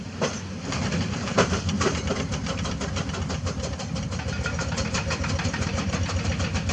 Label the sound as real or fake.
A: fake